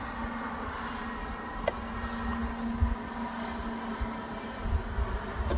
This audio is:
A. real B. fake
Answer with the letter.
A